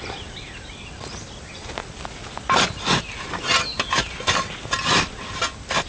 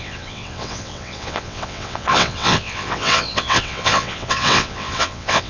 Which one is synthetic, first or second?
second